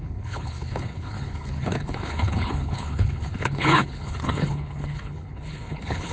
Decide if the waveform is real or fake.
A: fake